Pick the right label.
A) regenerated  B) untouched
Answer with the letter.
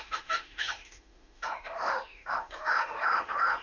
A